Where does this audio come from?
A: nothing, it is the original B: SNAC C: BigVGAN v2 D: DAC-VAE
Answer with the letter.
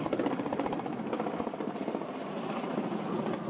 A